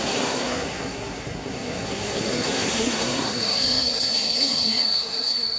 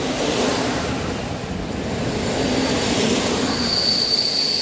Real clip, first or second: second